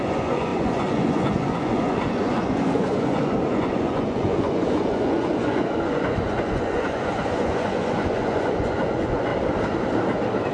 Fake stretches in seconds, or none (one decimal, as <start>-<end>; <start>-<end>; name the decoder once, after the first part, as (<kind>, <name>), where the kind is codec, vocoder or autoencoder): 0.0-9.3 (vocoder, Vocos)